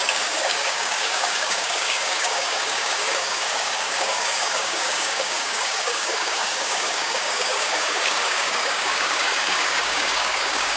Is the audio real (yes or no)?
no